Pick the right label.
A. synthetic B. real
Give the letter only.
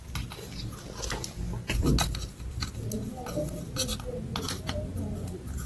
B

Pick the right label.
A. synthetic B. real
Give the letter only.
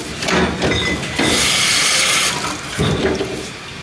B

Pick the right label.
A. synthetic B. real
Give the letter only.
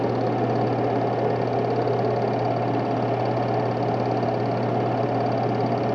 B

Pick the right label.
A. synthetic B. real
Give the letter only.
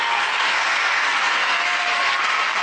A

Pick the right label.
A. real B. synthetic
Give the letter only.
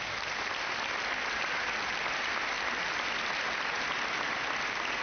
A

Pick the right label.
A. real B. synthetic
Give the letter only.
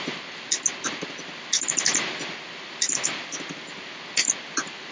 A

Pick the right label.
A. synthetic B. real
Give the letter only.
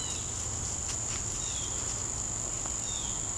B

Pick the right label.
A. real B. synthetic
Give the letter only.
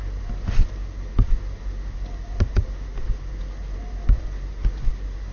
A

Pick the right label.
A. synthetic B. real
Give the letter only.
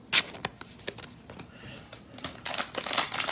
B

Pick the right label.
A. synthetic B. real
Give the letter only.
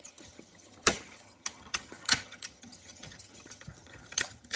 A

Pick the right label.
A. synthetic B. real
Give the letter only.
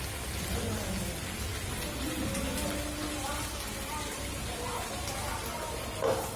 B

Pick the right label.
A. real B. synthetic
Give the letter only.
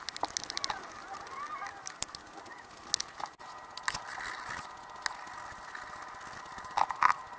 A